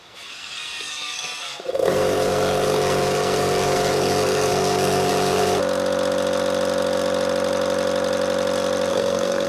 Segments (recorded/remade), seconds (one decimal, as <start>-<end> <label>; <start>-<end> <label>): 0.0-5.6 remade; 5.6-8.9 recorded; 8.9-9.5 remade